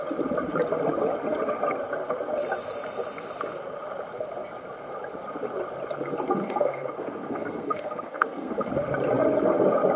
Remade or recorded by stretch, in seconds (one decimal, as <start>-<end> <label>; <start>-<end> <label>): 0.0-6.4 recorded; 6.4-8.7 remade; 8.7-10.0 recorded